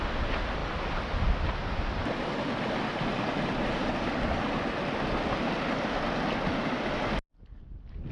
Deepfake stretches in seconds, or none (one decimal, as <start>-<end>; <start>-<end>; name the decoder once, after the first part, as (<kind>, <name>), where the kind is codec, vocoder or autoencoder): none